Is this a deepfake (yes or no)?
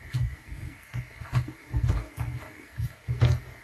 yes